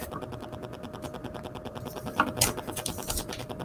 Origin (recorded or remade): remade